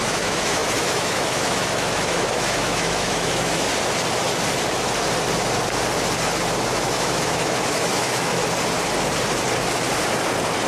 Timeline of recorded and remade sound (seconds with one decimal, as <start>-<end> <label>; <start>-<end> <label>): 0.0-3.7 remade; 3.7-6.7 recorded; 6.7-8.4 remade; 8.4-10.7 recorded